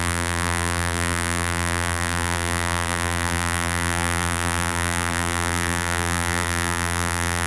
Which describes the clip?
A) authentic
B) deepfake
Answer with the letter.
B